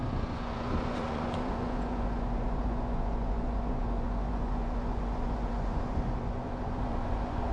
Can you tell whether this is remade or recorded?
remade